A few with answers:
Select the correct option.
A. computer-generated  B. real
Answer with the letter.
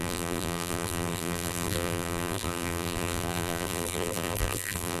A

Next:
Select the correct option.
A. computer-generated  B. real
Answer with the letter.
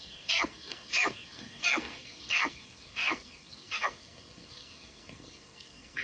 A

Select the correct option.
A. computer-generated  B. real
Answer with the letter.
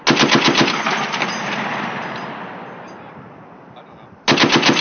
B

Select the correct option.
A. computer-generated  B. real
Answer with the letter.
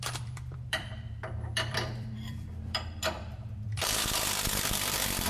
A